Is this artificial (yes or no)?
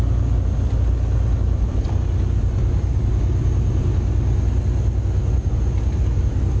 no